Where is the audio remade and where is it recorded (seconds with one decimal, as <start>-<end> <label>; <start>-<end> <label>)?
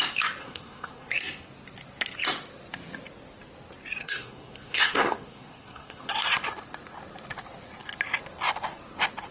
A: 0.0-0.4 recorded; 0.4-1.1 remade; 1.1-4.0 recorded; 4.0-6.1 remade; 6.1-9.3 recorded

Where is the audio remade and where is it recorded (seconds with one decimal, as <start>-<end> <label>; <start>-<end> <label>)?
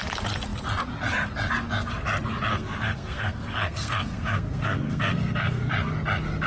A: 0.0-2.5 recorded; 2.5-5.7 remade; 5.7-6.5 recorded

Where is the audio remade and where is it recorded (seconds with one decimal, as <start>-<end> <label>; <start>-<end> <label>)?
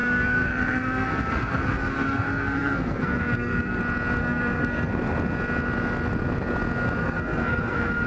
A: 0.0-3.8 remade; 3.8-4.2 recorded; 4.2-4.9 remade; 4.9-7.0 recorded; 7.0-8.1 remade